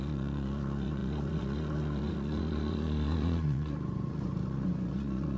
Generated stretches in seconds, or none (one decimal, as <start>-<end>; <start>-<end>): 0.0-5.4